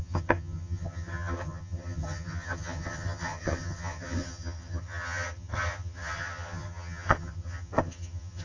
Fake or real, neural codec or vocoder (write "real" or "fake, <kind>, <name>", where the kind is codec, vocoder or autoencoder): fake, vocoder, HiFi-GAN